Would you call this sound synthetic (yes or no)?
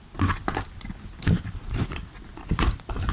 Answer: no